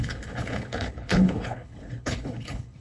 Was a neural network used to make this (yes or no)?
yes